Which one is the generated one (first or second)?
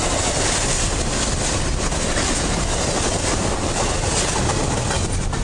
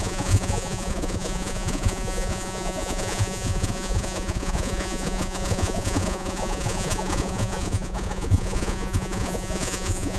second